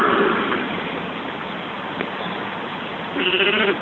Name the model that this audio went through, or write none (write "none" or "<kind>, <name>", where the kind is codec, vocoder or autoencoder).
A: none